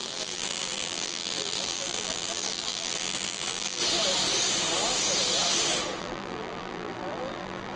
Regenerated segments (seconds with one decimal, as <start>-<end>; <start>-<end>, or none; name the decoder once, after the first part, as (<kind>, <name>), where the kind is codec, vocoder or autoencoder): 0.0-3.8 (vocoder, BigVGAN v2); 6.0-7.8